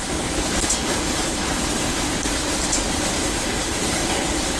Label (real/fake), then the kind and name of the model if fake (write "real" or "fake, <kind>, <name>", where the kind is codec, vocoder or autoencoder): fake, codec, HILCodec